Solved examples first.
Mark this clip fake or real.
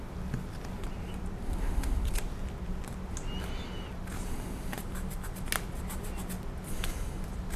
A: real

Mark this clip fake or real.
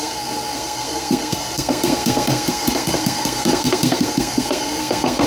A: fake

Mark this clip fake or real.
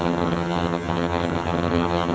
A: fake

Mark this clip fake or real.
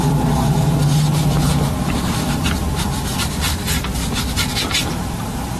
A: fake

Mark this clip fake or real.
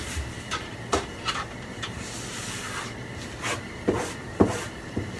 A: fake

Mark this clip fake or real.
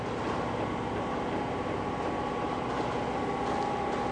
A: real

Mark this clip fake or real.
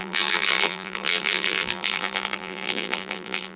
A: fake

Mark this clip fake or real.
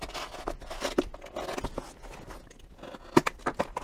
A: real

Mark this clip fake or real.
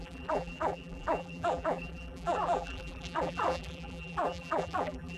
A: fake